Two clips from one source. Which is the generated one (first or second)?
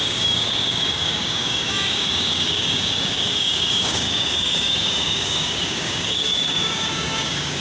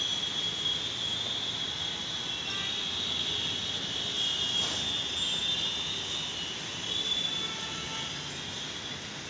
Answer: first